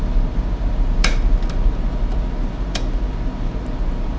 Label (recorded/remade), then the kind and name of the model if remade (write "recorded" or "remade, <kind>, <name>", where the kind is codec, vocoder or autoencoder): recorded